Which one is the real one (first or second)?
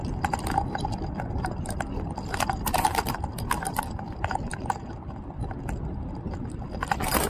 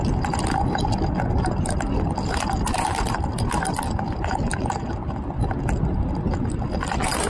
second